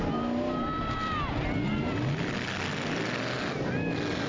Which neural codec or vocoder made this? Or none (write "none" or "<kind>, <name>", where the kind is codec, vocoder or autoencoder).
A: none